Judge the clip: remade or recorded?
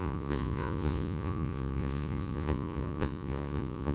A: remade